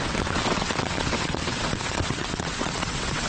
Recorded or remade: remade